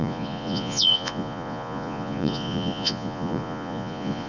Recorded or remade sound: remade